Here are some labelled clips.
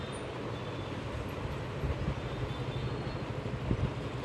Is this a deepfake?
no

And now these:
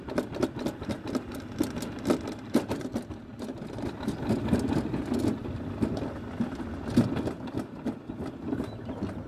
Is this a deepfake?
no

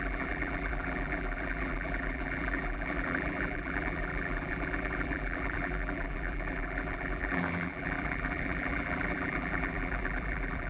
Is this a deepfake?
yes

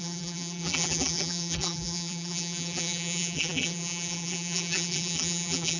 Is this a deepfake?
yes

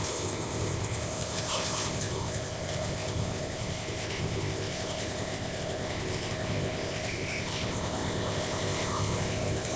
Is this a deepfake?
yes